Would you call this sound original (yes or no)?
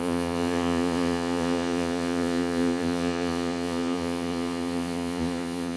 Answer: no